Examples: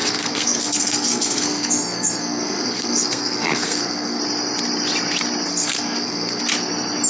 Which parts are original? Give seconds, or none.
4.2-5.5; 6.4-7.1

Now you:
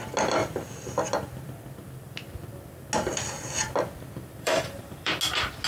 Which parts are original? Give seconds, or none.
0.0-4.3; 5.1-5.7

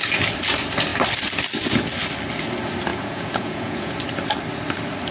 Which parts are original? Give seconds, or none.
0.0-2.9; 3.9-5.1